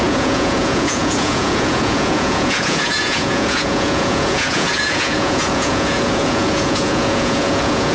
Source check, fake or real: fake